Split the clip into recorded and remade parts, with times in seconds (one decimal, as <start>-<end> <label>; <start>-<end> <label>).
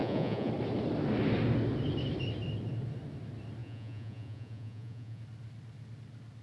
0.0-0.5 remade; 0.5-3.6 recorded; 3.6-5.2 remade; 5.2-6.4 recorded